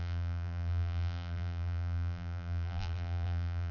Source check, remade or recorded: remade